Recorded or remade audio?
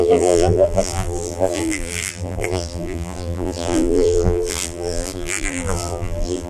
remade